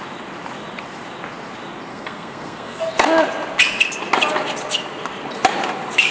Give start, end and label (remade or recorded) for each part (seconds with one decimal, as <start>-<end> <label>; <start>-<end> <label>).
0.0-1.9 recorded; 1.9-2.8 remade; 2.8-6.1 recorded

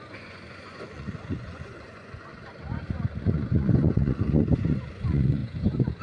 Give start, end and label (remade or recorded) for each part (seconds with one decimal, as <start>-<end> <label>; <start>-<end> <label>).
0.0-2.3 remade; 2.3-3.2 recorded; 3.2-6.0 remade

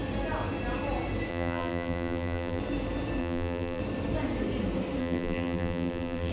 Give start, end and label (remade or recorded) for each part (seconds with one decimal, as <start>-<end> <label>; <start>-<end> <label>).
0.0-1.3 recorded; 1.3-2.6 remade; 2.6-3.2 recorded; 3.2-3.8 remade; 3.8-5.0 recorded; 5.0-6.3 remade

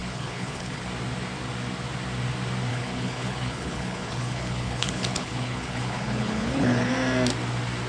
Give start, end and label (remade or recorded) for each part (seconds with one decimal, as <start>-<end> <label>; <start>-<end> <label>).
0.0-0.8 remade; 0.8-2.7 recorded; 2.7-6.9 remade; 6.9-7.9 recorded